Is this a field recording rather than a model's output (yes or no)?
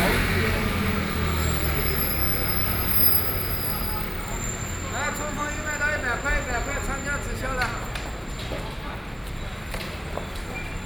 yes